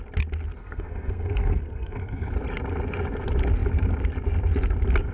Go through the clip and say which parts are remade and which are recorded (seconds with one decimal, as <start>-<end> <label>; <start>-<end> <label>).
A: 0.0-0.6 recorded; 0.6-2.3 remade; 2.3-5.1 recorded